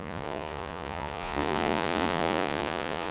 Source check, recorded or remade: remade